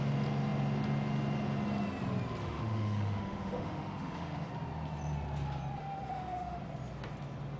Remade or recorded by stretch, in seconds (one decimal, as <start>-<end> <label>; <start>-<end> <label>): 0.0-2.4 recorded; 2.4-4.5 remade; 4.5-5.8 recorded; 5.8-6.6 remade; 6.6-7.6 recorded